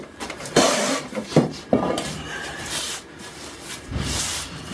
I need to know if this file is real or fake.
fake